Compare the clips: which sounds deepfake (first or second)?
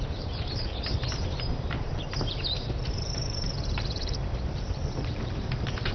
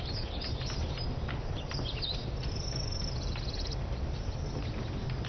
first